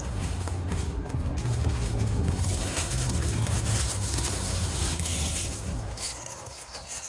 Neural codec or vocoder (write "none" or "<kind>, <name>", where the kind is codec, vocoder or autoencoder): codec, SNAC